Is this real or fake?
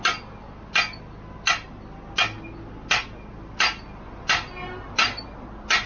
real